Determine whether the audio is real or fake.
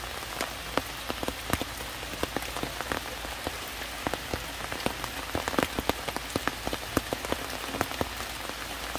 real